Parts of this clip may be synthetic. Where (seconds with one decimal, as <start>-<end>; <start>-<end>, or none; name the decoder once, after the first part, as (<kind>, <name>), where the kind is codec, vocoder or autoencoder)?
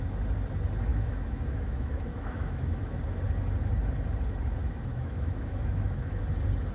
0.9-3.0 (autoencoder, DAC-VAE); 4.6-6.2